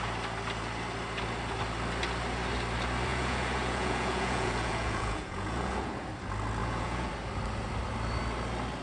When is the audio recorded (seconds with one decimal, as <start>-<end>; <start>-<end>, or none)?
0.0-3.1; 5.9-6.6; 7.1-8.8